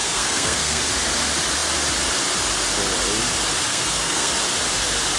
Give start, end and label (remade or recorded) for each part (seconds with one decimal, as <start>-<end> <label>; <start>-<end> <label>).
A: 0.0-0.8 remade; 0.8-3.7 recorded; 3.7-4.3 remade; 4.3-5.2 recorded